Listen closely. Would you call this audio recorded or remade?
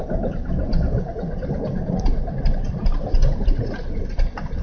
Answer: recorded